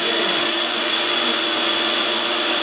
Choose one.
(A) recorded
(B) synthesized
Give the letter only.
B